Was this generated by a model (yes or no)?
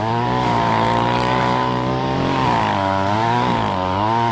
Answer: yes